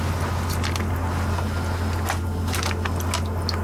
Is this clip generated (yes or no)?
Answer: no